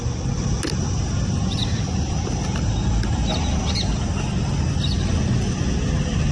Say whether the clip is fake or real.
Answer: real